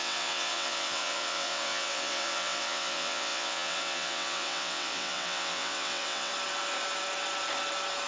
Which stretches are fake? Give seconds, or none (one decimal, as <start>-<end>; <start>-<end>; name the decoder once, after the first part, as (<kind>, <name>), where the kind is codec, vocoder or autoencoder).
0.0-6.3 (vocoder, WaveNeXt)